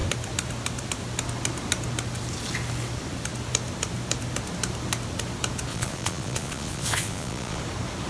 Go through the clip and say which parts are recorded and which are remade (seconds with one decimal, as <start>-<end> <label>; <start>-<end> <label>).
0.0-5.7 recorded; 5.7-7.6 remade; 7.6-8.1 recorded